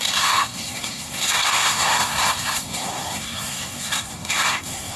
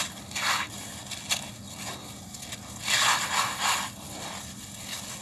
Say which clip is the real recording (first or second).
second